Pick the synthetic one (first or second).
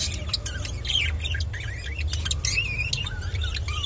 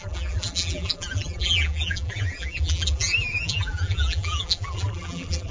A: second